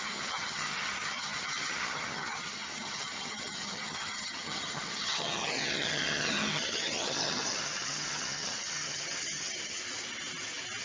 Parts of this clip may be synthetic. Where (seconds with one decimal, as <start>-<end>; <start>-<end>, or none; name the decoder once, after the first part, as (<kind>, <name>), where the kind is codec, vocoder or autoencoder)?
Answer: 0.0-9.8 (vocoder, HiFi-GAN)